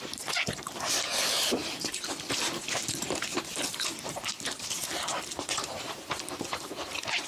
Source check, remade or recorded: remade